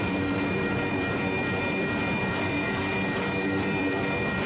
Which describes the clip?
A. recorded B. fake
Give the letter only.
B